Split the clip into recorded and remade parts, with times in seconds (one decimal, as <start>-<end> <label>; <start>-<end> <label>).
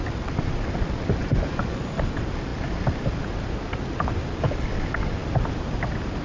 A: 0.0-1.2 recorded; 1.2-1.8 remade; 1.8-6.2 recorded